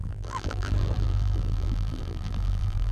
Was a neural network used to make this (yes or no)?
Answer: yes